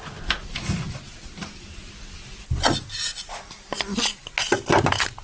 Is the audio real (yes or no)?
yes